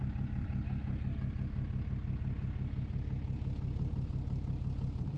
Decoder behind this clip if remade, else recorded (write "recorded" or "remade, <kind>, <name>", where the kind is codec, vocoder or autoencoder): recorded